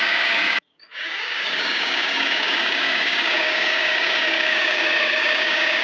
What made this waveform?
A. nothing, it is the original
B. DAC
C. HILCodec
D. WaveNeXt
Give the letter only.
B